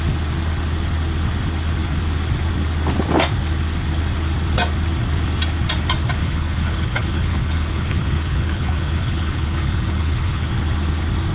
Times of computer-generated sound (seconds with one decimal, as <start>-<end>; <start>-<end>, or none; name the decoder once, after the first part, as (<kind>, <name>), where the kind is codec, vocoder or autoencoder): 6.2-10.5 (codec, HILCodec)